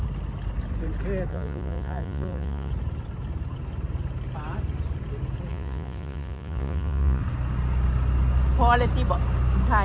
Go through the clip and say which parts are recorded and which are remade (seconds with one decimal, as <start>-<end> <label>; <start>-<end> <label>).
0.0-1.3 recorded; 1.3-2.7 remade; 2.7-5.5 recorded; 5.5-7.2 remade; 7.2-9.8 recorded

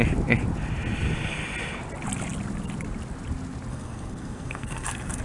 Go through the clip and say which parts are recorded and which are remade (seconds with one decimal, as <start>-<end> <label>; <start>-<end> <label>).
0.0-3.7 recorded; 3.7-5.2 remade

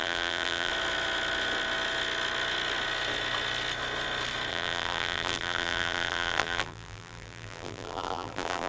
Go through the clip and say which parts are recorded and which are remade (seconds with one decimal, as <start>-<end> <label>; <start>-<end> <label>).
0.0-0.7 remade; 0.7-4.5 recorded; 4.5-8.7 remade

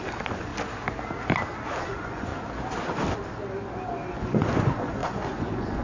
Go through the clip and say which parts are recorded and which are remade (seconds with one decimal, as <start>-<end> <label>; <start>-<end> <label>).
0.0-0.5 remade; 0.5-1.8 recorded; 1.8-2.3 remade; 2.3-4.1 recorded; 4.1-5.8 remade